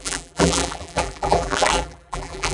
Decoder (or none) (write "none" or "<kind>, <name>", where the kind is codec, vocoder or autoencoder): vocoder, BigVGAN v2